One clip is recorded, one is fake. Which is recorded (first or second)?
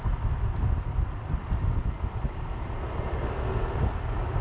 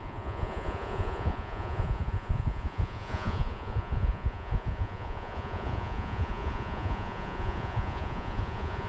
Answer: first